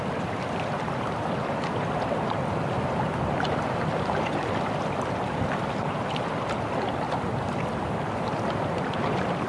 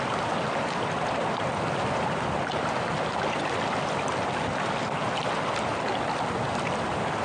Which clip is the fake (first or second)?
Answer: first